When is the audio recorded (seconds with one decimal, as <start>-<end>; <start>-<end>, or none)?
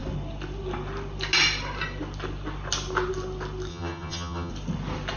0.0-3.7; 4.5-5.2